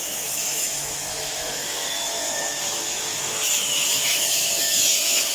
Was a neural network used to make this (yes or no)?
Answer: yes